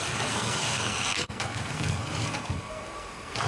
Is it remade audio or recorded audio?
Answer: remade